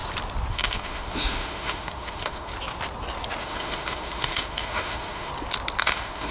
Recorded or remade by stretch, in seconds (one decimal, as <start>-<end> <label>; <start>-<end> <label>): 0.0-0.5 recorded; 0.5-2.5 remade; 2.5-3.4 recorded; 3.4-5.3 remade; 5.3-5.8 recorded; 5.8-6.3 remade